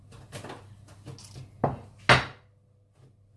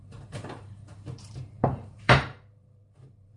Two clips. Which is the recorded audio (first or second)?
first